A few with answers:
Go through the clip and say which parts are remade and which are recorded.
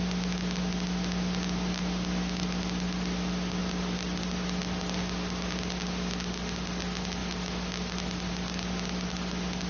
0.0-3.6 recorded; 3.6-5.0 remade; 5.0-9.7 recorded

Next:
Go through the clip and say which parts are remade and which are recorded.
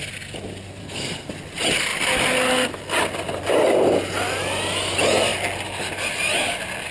0.0-0.8 recorded; 0.8-1.3 remade; 1.3-6.9 recorded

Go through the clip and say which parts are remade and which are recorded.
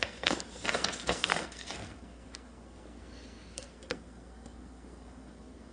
0.0-5.7 remade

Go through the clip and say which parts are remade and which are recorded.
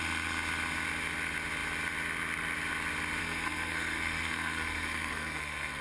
0.0-3.2 recorded; 3.2-5.8 remade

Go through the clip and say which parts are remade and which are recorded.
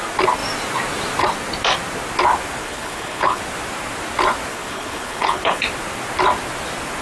0.0-2.6 recorded; 2.6-3.4 remade; 3.4-4.5 recorded; 4.5-5.6 remade; 5.6-7.0 recorded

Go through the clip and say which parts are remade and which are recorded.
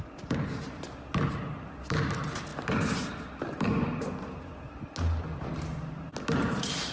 0.0-6.9 recorded